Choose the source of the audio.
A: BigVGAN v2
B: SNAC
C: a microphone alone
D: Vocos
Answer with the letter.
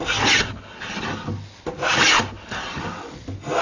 C